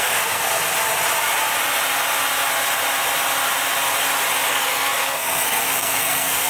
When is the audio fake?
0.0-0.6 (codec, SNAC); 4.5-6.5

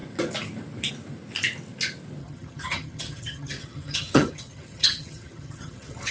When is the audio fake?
2.2-6.1 (vocoder, HiFi-GAN)

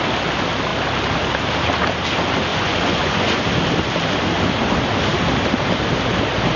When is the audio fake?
2.5-3.4 (vocoder, Vocos)

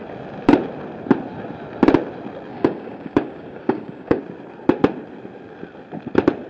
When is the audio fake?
2.5-4.2 (codec, DAC)

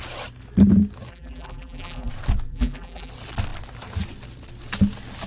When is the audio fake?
1.1-2.1 (vocoder, BigVGAN v2); 2.5-3.1